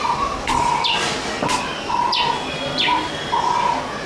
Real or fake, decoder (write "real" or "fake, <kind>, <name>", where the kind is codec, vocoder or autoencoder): real